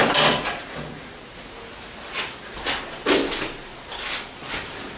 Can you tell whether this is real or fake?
real